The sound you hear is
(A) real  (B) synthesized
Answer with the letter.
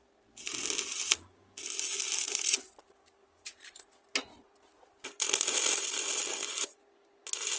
A